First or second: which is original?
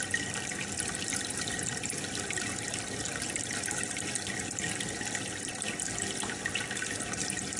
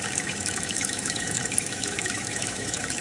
first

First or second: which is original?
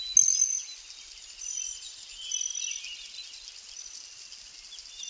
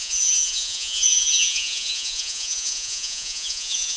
first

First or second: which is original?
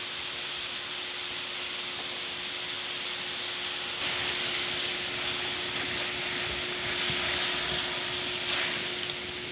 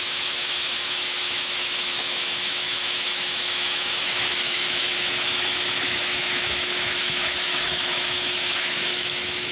first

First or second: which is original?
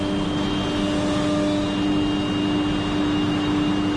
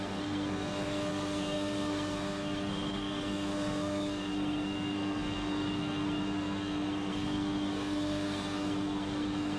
first